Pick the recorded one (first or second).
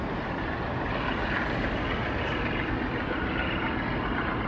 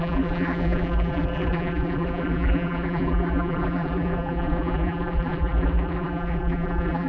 first